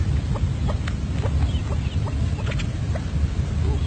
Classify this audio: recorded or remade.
recorded